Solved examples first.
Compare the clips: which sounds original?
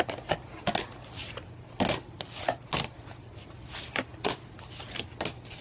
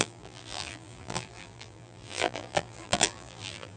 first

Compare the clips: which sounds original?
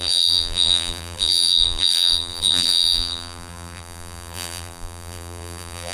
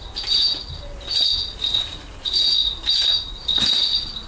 second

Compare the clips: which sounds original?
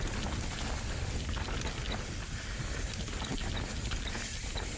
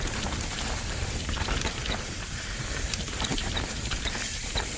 first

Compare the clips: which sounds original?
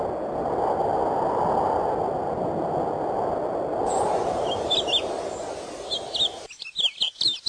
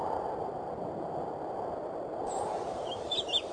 first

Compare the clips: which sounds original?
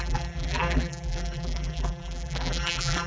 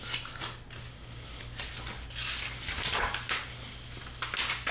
second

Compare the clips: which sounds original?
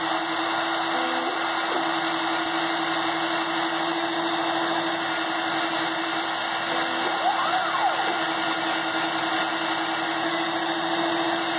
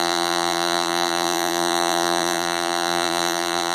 first